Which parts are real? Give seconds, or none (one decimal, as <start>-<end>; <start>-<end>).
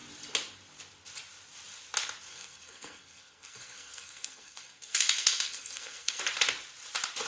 0.0-2.3; 6.2-7.3